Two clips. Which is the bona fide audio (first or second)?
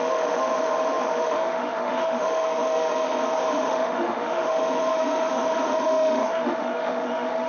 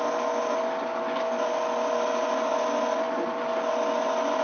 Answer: second